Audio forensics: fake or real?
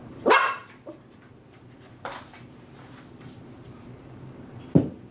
fake